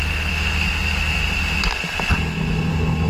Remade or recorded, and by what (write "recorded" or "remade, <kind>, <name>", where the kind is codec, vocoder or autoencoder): recorded